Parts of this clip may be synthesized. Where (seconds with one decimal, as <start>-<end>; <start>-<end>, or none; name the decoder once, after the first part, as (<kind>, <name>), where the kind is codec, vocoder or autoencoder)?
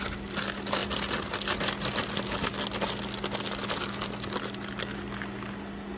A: none